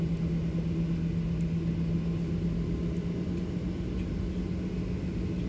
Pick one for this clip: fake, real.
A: real